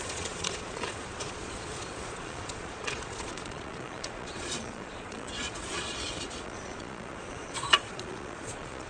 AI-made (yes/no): yes